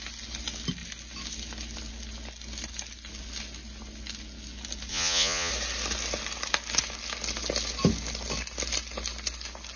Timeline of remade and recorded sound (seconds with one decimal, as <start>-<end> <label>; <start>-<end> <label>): 0.0-4.9 recorded; 4.9-5.5 remade; 5.5-9.8 recorded